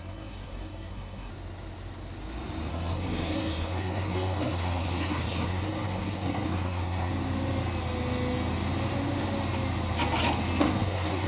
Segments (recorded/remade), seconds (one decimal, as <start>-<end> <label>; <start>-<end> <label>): 0.0-1.3 remade; 1.3-2.7 recorded; 2.7-7.1 remade; 7.1-10.6 recorded; 10.6-11.3 remade